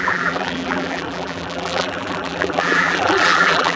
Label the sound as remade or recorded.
remade